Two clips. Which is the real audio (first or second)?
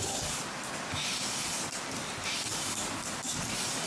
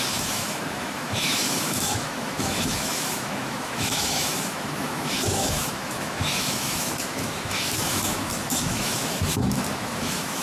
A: first